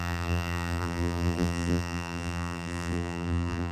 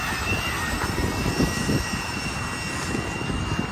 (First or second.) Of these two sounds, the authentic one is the second